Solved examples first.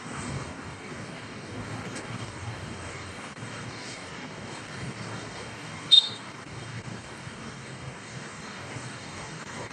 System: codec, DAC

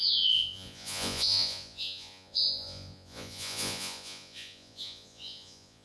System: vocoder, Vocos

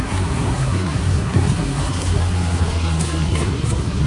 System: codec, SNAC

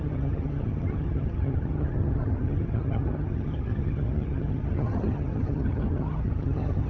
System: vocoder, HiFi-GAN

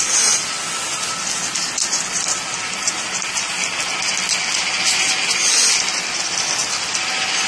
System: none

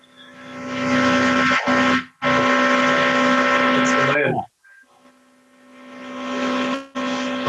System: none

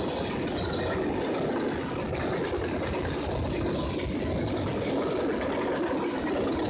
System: none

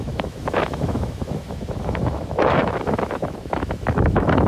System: autoencoder, DAC-VAE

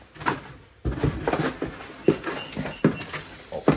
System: none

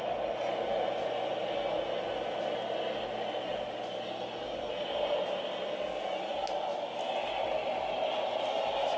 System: none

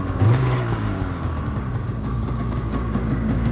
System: codec, DAC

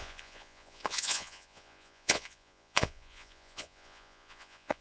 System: vocoder, Vocos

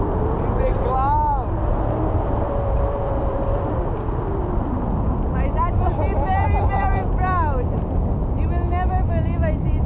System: none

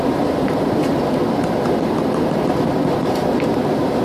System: vocoder, BigVGAN v2